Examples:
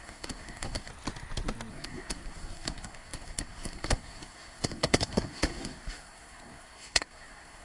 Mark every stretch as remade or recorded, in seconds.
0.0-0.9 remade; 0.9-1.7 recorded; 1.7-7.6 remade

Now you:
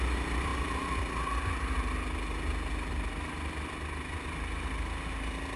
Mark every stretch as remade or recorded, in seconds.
0.0-5.6 recorded

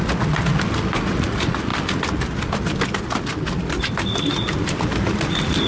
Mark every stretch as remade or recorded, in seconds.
0.0-5.7 recorded

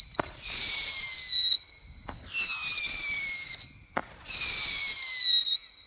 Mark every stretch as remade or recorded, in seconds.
0.0-5.9 recorded